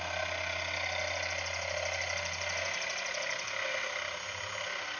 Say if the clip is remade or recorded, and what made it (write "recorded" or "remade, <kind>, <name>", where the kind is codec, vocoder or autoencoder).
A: recorded